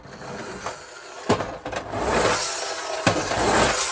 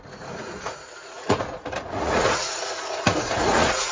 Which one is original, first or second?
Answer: first